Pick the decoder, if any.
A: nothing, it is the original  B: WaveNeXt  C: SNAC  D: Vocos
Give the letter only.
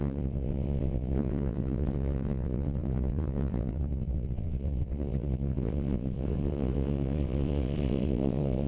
B